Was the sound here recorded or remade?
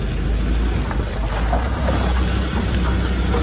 recorded